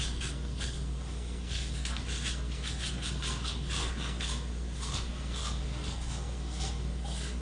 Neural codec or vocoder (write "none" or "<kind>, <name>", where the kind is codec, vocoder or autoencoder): codec, SNAC